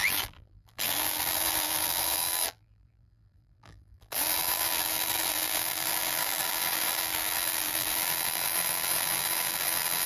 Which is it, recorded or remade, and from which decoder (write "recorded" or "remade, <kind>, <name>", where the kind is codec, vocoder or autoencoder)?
remade, vocoder, BigVGAN v2